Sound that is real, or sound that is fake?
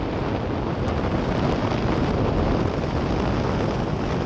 real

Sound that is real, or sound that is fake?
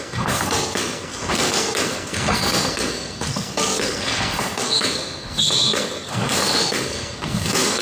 fake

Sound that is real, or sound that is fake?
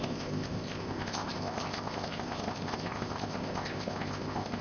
fake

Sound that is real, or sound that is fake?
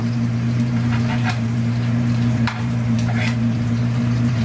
fake